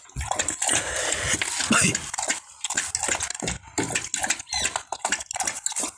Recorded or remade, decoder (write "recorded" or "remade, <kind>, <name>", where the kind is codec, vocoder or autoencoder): recorded